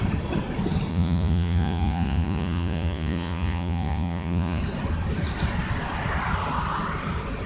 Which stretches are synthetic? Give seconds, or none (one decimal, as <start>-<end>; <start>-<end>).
0.9-4.6

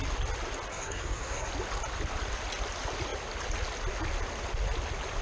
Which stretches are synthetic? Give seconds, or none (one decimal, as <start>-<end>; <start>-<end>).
0.7-1.5

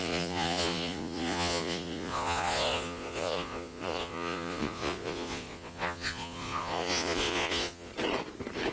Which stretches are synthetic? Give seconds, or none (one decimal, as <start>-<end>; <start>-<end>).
0.0-7.9

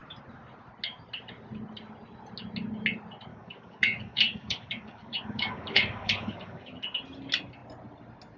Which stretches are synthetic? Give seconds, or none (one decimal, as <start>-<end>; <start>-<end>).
3.3-6.7

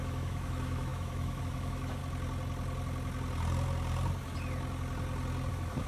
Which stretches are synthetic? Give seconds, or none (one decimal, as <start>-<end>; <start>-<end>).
0.0-2.0; 5.5-5.9

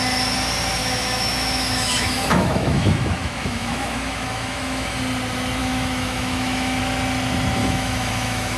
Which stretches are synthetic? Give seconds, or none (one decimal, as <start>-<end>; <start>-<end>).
0.8-5.0; 5.6-6.8; 7.6-8.6

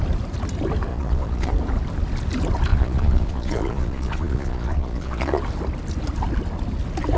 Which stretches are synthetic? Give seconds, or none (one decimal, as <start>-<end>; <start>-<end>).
0.9-1.5; 2.7-5.4